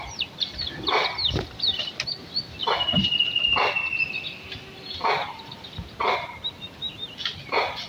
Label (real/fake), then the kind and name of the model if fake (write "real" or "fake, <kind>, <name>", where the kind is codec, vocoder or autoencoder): real